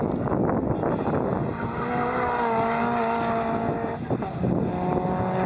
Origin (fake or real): real